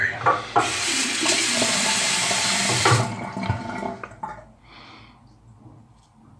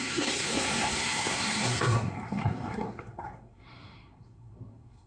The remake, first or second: second